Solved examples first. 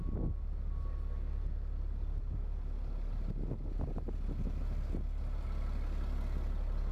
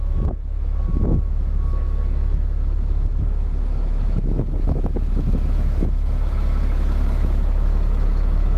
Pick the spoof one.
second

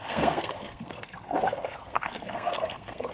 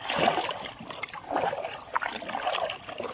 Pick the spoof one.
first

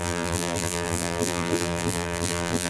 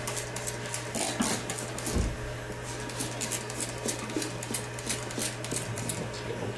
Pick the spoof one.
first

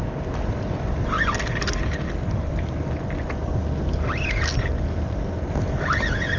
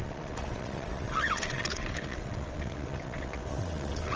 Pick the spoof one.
second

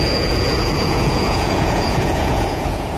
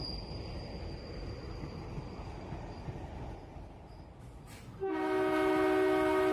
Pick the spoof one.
first